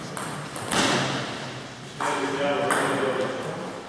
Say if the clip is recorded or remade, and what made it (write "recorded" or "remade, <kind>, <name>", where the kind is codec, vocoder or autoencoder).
recorded